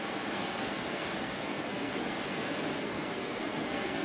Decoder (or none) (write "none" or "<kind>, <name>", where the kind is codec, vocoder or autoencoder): codec, SNAC